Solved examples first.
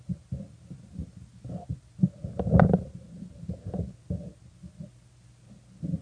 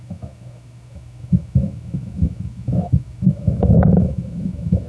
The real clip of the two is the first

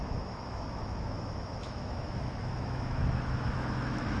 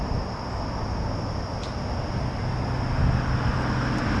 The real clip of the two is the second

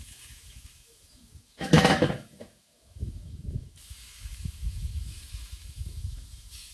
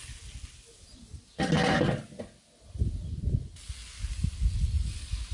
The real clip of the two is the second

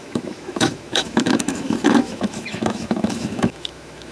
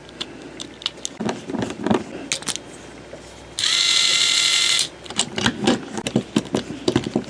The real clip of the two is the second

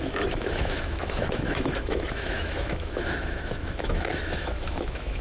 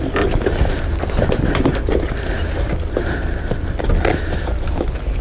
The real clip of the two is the second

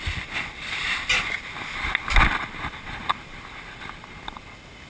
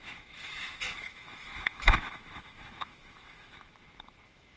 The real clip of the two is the first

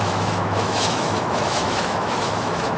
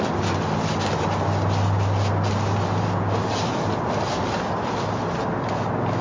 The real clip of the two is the second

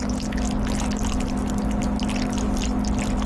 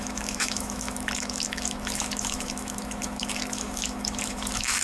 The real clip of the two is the first